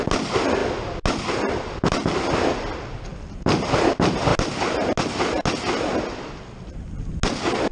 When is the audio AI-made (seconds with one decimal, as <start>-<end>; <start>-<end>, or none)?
3.1-3.9